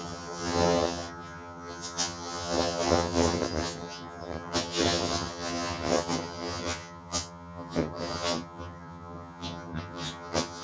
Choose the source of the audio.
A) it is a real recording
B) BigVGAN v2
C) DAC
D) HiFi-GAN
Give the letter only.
D